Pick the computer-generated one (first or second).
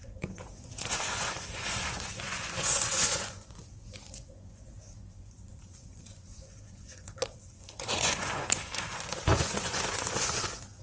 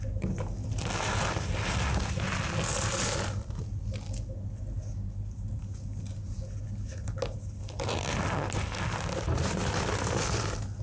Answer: first